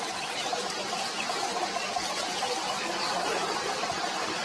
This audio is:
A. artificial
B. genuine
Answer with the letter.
B